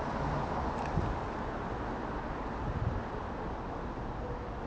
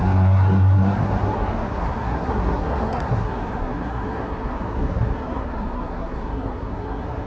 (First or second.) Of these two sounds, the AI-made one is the second